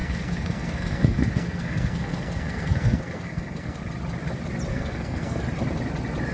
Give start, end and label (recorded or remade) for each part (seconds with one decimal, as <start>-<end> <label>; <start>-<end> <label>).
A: 0.0-3.8 remade; 3.8-4.7 recorded; 4.7-5.4 remade; 5.4-6.3 recorded

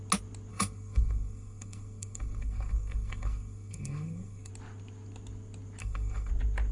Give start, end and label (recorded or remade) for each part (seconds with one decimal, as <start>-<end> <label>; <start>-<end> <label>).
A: 0.0-0.5 recorded; 0.5-4.5 remade; 4.5-5.8 recorded; 5.8-6.3 remade; 6.3-6.7 recorded

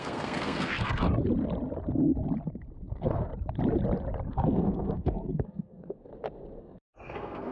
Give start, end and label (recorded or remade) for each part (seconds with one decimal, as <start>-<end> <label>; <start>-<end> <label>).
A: 0.0-1.1 remade; 1.1-2.9 recorded; 2.9-3.3 remade; 3.3-4.3 recorded; 4.3-6.1 remade; 6.1-6.6 recorded; 6.6-7.5 remade

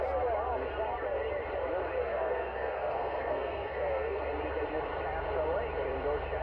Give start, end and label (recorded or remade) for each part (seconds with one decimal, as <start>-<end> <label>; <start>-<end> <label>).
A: 0.0-2.0 recorded; 2.0-4.2 remade; 4.2-6.4 recorded

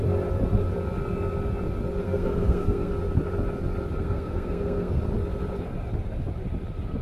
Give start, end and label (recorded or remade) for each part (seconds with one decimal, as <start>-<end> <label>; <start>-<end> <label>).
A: 0.0-2.0 recorded; 2.0-2.9 remade; 2.9-4.0 recorded; 4.0-5.0 remade; 5.0-7.0 recorded

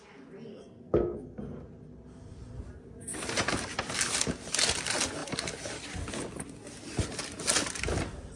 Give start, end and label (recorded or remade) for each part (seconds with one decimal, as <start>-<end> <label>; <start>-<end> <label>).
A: 0.0-0.5 recorded; 0.5-1.4 remade; 1.4-8.4 recorded

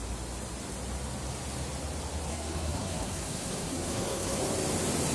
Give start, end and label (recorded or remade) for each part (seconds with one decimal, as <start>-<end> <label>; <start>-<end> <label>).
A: 0.0-2.3 recorded; 2.3-4.4 remade; 4.4-5.1 recorded